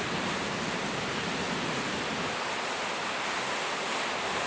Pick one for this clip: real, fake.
real